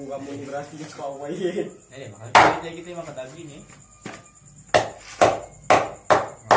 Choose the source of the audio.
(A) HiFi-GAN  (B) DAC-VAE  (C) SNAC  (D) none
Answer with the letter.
D